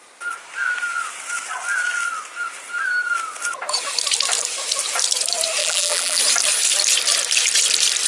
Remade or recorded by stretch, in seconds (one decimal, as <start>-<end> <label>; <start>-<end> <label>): 0.0-5.6 recorded; 5.6-6.2 remade; 6.2-8.1 recorded